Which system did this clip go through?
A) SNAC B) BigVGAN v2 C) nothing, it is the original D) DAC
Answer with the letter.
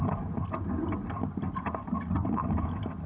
C